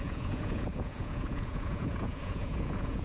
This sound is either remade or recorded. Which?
remade